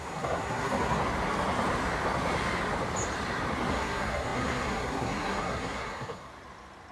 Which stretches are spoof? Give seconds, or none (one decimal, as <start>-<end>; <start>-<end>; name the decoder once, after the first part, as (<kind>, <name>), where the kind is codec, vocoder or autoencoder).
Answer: 0.0-1.0 (codec, SNAC); 3.7-6.3